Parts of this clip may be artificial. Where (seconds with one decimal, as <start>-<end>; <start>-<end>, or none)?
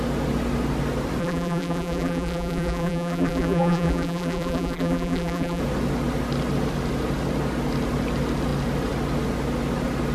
1.2-5.6